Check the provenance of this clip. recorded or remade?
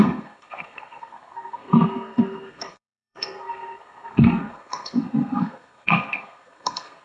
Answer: remade